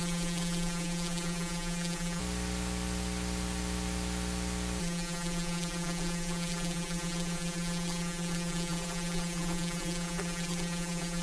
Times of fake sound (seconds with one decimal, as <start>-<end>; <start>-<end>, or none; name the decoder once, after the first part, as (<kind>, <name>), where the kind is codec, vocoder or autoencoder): 0.0-2.2 (vocoder, BigVGAN v2); 4.8-11.2